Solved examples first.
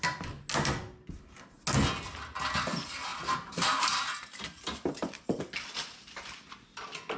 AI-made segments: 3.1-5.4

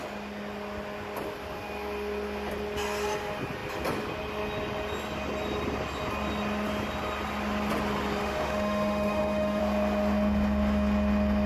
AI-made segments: 8.2-9.6